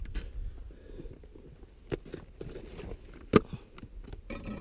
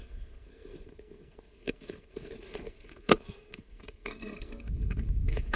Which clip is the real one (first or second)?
first